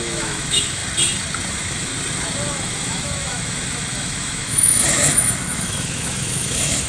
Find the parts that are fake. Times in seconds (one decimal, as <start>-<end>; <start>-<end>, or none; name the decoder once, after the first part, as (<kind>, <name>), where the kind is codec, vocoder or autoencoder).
0.0-0.8 (autoencoder, DAC-VAE); 1.5-1.9; 2.5-6.9